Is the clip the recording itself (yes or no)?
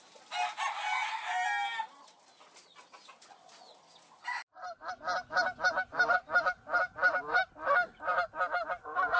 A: yes